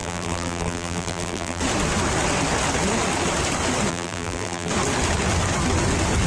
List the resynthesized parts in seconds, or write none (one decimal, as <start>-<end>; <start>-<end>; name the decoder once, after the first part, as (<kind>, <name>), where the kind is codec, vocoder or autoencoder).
0.0-1.6 (vocoder, BigVGAN v2); 3.9-4.7